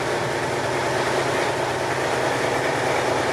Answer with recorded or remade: recorded